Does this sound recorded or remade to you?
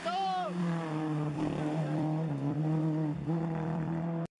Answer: remade